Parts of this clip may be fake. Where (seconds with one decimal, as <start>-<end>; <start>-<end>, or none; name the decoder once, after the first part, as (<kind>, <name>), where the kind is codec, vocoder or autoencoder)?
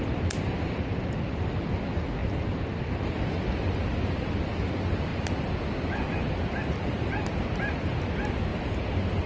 none